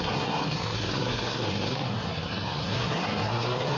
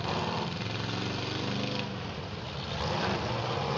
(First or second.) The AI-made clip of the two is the first